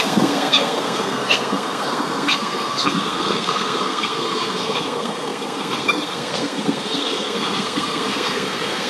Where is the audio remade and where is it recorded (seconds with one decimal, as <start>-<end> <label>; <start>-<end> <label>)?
0.0-8.9 remade